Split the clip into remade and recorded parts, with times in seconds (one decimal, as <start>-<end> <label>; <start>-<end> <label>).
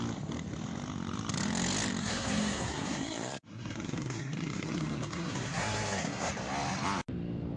0.0-2.0 recorded; 2.0-6.3 remade; 6.3-7.6 recorded